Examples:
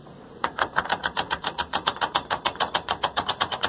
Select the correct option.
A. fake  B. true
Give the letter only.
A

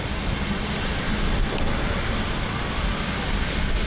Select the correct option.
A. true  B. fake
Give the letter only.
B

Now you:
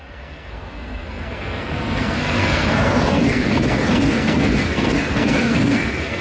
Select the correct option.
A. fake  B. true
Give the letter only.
A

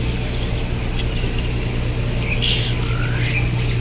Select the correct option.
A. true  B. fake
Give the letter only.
A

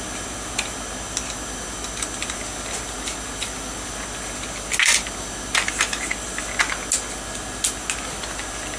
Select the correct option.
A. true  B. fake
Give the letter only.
A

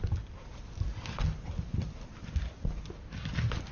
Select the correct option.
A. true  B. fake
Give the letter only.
A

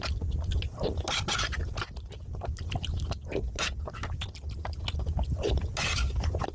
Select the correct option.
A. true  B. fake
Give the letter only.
A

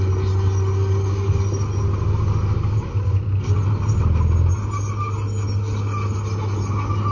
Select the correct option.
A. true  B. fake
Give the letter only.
A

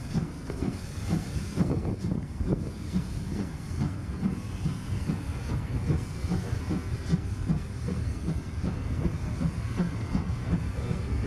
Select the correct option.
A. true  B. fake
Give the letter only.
B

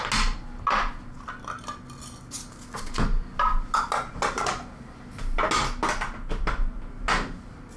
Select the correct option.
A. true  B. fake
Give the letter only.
A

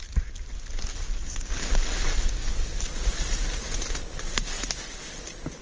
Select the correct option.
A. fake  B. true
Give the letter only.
B